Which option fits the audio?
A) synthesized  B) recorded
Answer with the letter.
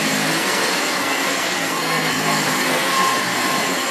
A